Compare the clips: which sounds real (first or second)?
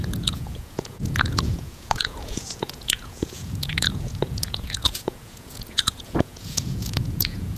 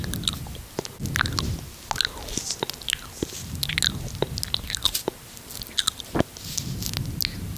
second